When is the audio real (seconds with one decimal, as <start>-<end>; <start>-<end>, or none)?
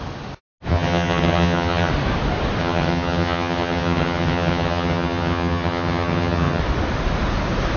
0.0-0.7; 1.9-2.6; 6.6-7.8